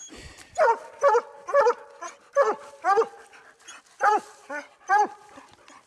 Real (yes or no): yes